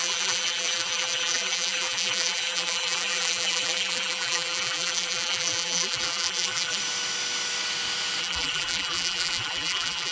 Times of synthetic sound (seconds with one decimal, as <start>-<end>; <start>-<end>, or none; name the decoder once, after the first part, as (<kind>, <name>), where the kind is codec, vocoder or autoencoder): 0.0-6.8 (vocoder, BigVGAN v2); 8.2-10.1